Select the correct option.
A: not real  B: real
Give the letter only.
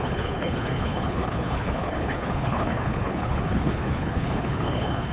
A